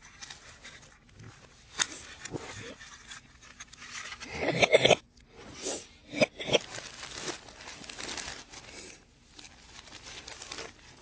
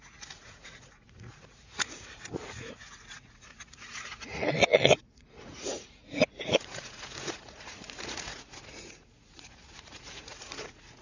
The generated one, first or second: second